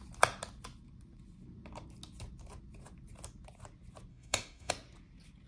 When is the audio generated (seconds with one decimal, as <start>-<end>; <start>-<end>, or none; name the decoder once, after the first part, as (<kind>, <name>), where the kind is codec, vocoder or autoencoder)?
4.1-4.7 (autoencoder, DAC-VAE)